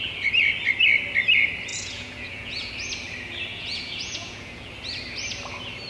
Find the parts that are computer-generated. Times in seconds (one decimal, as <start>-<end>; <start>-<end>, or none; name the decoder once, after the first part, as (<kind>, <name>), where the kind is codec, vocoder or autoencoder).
1.7-2.7 (vocoder, Vocos); 3.5-4.7